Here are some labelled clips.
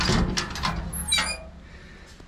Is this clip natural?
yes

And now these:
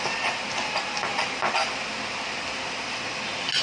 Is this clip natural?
yes